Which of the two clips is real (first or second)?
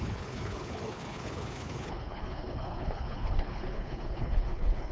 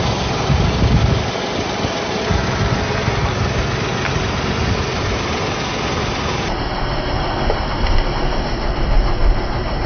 second